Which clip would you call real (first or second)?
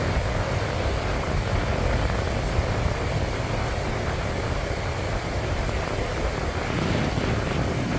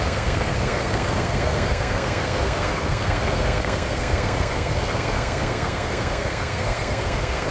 first